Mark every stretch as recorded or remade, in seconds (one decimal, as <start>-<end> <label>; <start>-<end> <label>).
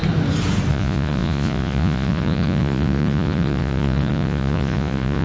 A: 0.0-0.7 recorded; 0.7-5.2 remade